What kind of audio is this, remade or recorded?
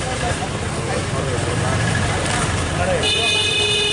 recorded